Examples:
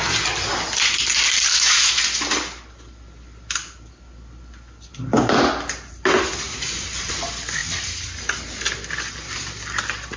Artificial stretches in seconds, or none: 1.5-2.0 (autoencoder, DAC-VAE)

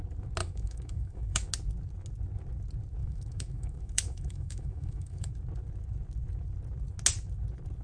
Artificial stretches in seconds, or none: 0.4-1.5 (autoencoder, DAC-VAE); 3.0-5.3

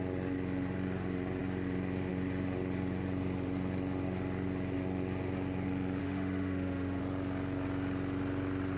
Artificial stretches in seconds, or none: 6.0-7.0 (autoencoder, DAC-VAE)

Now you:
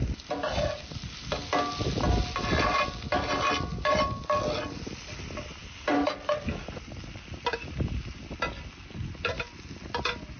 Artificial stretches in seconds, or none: none

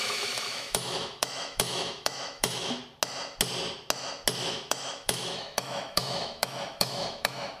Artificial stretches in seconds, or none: 0.0-2.8 (autoencoder, DAC-VAE); 4.4-7.6

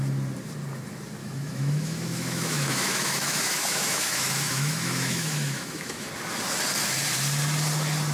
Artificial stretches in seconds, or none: 1.2-6.1 (autoencoder, DAC-VAE)

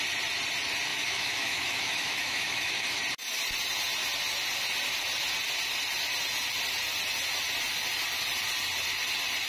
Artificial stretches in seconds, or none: 0.9-3.0 (autoencoder, DAC-VAE)

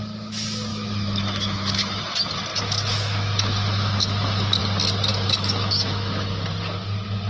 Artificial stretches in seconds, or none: 0.7-2.0 (autoencoder, DAC-VAE); 2.5-4.6; 5.1-6.3